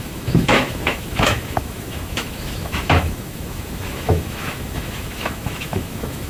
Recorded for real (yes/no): no